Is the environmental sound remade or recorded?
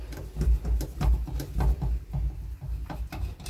recorded